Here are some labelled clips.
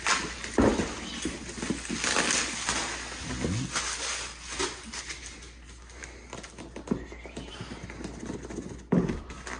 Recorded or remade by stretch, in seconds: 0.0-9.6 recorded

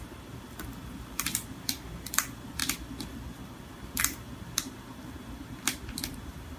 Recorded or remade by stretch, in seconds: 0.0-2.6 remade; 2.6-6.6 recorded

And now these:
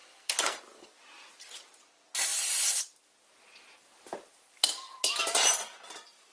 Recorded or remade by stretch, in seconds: 0.0-0.6 remade; 0.6-6.3 recorded

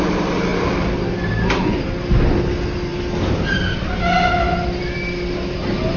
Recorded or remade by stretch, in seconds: 0.0-6.0 recorded

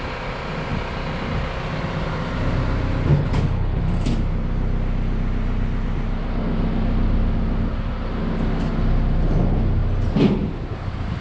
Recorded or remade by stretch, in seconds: 0.0-3.1 recorded; 3.1-3.8 remade; 3.8-11.2 recorded

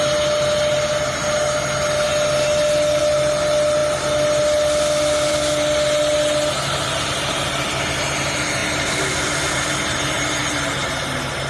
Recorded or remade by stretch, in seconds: 0.0-8.6 recorded; 8.6-10.9 remade; 10.9-11.5 recorded

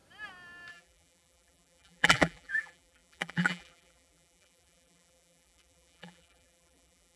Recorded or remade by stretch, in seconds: 0.0-0.7 recorded; 0.7-7.2 remade